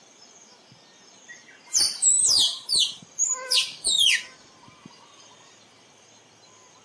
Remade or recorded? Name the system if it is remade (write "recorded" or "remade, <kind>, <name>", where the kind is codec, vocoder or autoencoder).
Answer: recorded